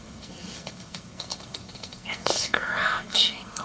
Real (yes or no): no